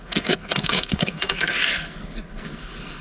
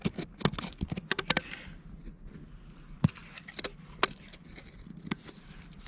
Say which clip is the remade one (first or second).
first